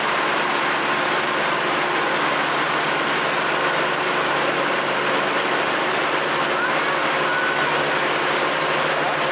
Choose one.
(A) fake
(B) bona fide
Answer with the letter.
B